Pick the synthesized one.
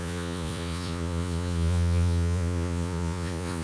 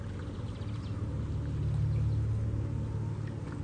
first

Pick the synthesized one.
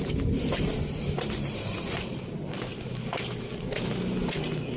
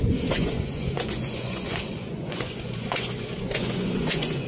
second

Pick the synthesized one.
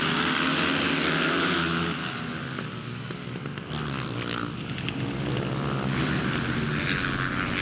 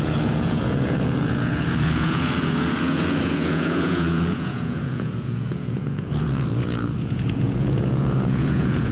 second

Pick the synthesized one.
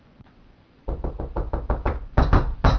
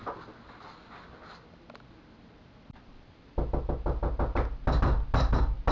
first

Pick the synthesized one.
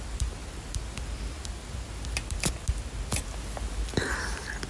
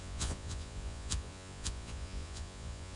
second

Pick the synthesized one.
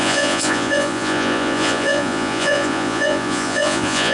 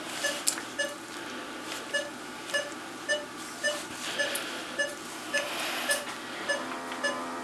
first